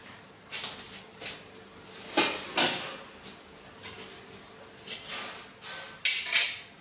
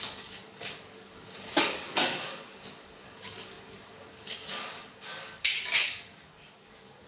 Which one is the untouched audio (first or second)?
first